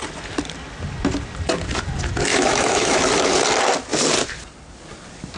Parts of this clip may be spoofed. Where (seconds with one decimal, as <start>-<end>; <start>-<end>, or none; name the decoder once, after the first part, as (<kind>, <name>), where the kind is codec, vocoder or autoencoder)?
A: 2.3-3.0 (autoencoder, DAC-VAE)